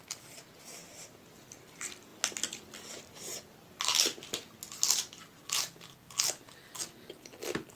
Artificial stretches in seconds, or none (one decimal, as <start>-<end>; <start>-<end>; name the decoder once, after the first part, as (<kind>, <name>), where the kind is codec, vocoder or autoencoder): none